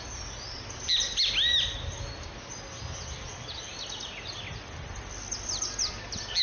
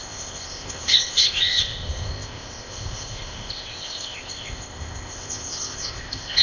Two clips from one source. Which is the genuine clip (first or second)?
first